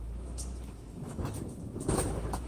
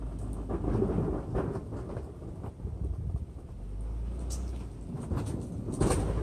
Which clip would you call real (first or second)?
second